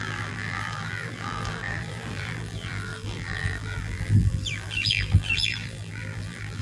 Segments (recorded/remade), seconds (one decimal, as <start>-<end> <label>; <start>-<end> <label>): 0.0-6.6 remade